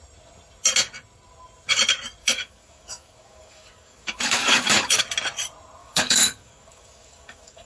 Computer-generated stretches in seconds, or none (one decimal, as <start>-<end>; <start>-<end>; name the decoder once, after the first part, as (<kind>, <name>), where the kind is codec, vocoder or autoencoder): 2.2-5.0 (codec, DAC); 5.8-7.7